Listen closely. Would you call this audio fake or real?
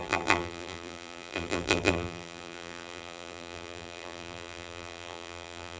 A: fake